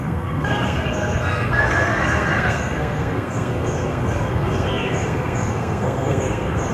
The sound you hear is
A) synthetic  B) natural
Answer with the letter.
A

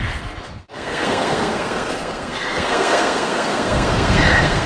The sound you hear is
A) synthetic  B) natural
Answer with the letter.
A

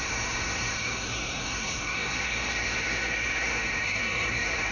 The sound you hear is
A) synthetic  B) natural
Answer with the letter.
A